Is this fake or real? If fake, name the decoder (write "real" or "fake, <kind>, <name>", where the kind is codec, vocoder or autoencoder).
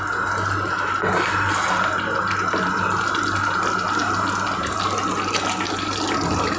real